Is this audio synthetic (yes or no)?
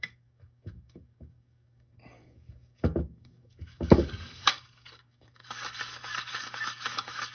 yes